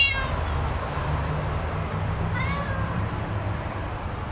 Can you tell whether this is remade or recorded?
remade